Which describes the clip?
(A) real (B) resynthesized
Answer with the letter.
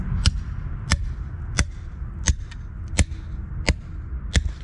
A